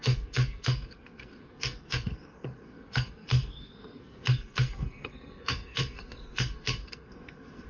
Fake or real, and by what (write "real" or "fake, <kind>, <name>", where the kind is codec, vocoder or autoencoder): fake, codec, SNAC